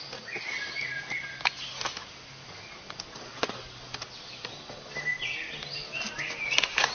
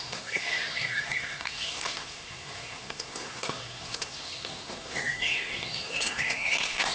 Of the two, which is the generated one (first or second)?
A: second